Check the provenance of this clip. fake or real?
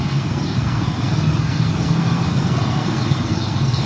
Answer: fake